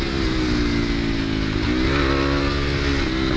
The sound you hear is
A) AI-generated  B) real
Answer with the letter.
B